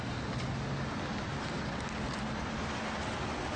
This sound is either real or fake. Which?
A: real